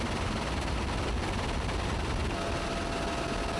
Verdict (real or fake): real